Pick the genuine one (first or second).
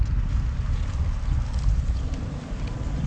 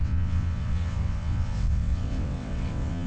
first